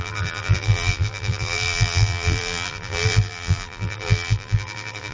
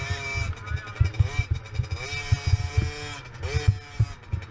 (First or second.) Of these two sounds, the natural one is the second